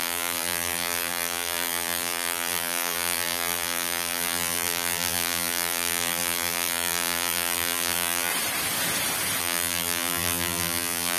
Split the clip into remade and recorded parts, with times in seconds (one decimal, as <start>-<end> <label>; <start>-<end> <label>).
0.0-8.3 remade; 8.3-9.4 recorded; 9.4-11.2 remade